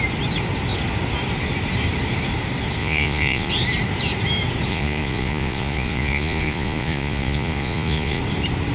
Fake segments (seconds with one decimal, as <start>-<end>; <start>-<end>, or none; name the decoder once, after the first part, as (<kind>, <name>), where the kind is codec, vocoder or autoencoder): 2.8-3.5 (vocoder, Vocos); 4.7-8.2